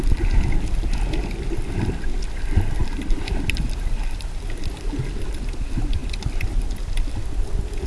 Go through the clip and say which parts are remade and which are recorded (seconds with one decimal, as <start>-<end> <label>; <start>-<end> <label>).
0.0-7.9 recorded